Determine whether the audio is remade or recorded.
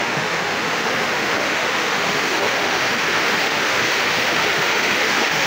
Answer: remade